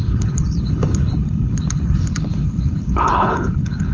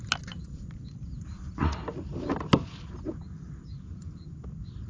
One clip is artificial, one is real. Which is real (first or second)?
second